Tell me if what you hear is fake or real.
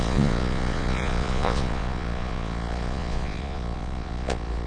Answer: fake